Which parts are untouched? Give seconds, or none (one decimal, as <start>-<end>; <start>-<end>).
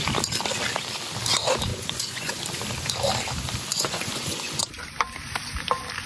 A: 0.0-1.7; 2.4-3.7; 4.6-6.1